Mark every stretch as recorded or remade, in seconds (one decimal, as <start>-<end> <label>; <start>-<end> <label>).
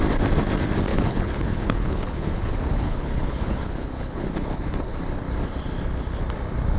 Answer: 0.0-0.9 recorded; 0.9-5.0 remade; 5.0-6.8 recorded